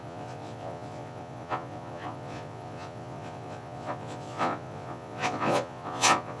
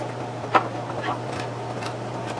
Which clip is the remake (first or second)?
first